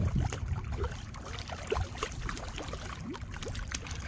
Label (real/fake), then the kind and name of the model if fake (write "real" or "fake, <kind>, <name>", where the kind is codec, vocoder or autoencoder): real